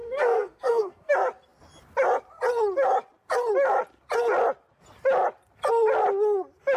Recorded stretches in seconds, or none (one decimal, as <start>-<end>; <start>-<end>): 1.1-6.8